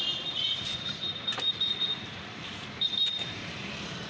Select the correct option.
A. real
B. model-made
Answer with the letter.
B